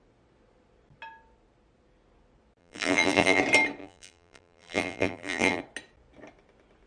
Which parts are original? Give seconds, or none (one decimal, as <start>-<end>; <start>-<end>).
0.0-2.6; 3.4-3.8; 5.6-6.9